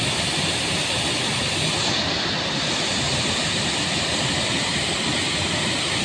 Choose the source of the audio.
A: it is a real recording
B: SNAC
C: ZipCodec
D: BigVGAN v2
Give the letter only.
A